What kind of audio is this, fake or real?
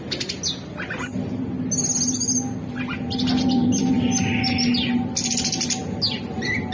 real